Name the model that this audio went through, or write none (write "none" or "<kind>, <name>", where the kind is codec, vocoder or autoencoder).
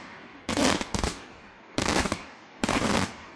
codec, DAC